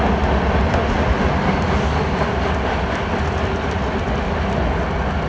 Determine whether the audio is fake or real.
real